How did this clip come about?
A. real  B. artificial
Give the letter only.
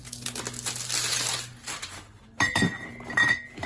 A